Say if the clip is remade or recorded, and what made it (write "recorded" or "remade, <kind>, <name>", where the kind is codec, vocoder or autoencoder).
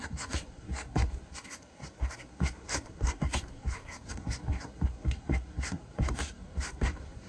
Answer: remade, codec, SNAC